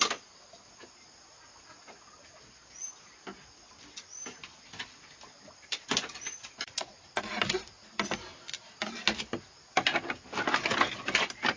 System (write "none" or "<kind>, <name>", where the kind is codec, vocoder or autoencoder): none